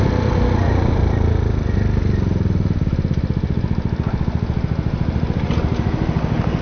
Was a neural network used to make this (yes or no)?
no